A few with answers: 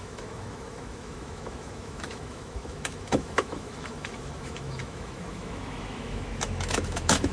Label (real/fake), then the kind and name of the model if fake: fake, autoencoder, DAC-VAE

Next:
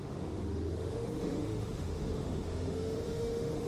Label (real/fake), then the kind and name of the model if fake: fake, autoencoder, DAC-VAE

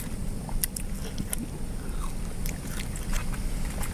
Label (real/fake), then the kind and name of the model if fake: real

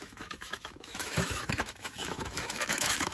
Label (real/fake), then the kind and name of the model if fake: fake, autoencoder, DAC-VAE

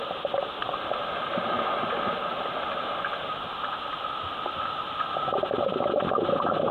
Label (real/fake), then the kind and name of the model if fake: real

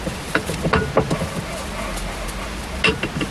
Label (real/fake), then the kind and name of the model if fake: real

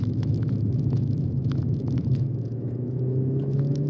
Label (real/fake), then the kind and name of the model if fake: fake, autoencoder, DAC-VAE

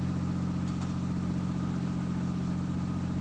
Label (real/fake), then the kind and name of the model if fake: real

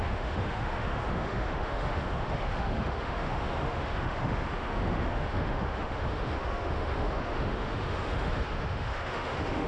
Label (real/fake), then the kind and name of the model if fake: fake, autoencoder, DAC-VAE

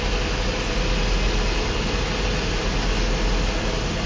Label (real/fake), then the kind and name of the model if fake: real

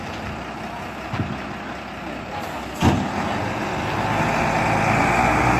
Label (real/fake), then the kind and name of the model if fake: real